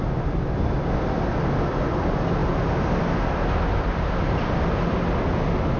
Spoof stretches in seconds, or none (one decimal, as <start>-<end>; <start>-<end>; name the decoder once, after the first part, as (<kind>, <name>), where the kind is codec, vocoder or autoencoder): none